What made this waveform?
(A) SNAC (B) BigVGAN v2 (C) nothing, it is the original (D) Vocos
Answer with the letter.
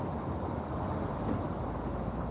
C